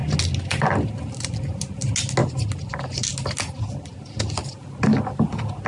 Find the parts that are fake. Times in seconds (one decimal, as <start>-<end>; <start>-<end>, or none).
none